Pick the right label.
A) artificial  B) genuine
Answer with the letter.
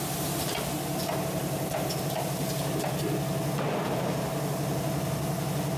B